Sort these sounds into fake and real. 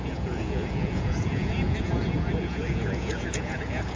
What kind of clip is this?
fake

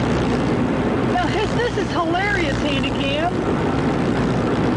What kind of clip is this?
real